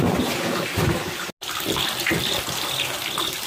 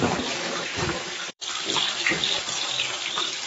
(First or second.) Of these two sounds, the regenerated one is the second